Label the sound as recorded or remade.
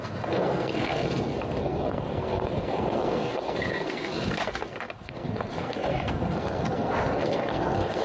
remade